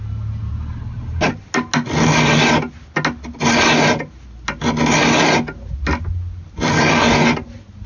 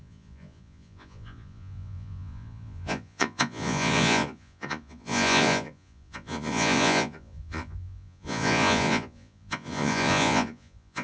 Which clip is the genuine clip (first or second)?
first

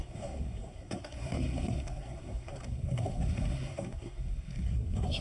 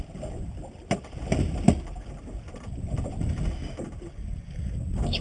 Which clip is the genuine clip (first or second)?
second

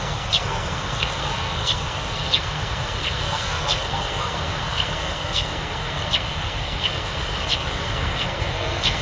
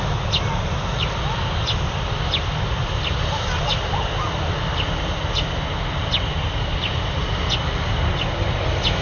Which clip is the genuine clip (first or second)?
second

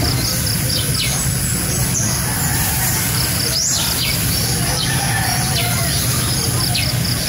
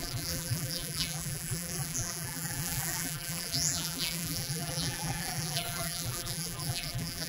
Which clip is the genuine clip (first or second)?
first